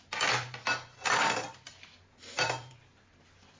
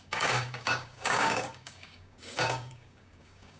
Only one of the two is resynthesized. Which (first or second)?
second